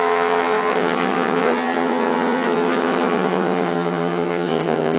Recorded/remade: remade